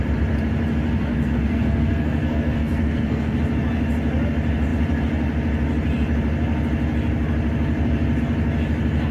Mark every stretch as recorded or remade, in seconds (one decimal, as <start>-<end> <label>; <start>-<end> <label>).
0.0-1.1 recorded; 1.1-3.4 remade; 3.4-9.1 recorded